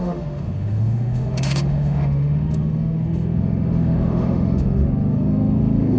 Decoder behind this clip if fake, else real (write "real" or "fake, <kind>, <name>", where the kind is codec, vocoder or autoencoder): fake, autoencoder, DAC-VAE